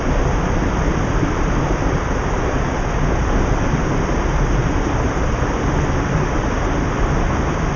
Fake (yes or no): no